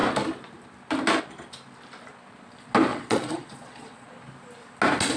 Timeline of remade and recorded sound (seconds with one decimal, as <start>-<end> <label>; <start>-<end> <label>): 0.0-2.9 recorded; 2.9-4.1 remade; 4.1-5.2 recorded